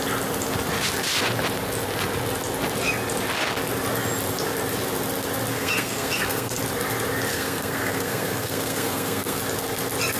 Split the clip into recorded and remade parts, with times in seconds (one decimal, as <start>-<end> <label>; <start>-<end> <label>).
0.0-5.5 recorded; 5.5-6.6 remade; 6.6-7.3 recorded; 7.3-9.4 remade; 9.4-10.2 recorded